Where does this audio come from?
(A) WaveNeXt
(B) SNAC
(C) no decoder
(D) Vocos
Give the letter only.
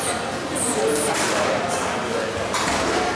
C